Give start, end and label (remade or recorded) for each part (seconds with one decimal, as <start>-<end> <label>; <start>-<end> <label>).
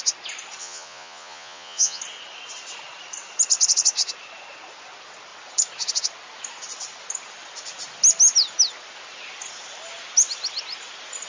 0.0-0.6 recorded; 0.6-2.0 remade; 2.0-11.3 recorded